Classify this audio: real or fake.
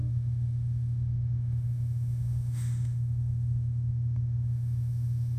fake